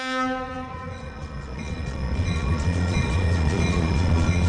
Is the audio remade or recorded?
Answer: remade